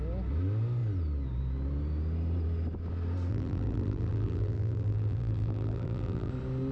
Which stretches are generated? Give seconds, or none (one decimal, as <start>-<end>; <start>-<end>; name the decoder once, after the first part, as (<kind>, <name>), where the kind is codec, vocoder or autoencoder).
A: 3.3-6.3 (vocoder, BigVGAN v2)